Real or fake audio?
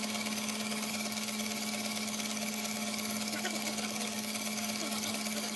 fake